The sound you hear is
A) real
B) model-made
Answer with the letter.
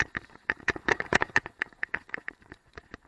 B